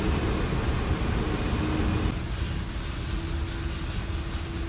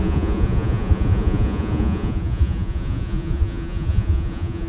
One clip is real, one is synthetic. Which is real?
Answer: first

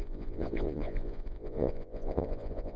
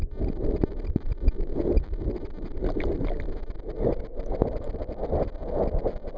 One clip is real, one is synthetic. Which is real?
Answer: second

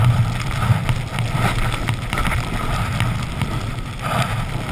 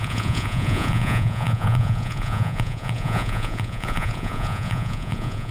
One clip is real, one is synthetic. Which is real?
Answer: first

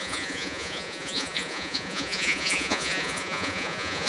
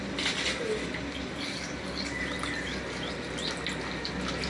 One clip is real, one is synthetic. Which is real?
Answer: second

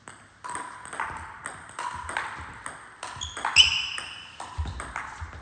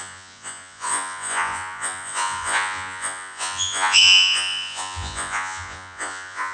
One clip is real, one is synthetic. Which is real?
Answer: first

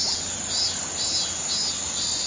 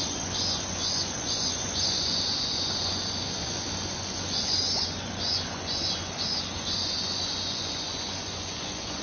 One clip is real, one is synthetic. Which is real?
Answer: first